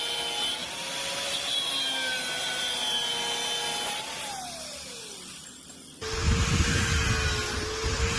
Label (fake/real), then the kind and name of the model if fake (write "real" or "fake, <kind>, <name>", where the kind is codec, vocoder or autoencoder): real